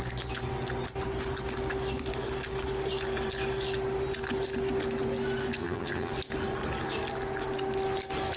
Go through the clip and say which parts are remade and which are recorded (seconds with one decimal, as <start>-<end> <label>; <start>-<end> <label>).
0.0-5.6 recorded; 5.6-6.1 remade; 6.1-8.4 recorded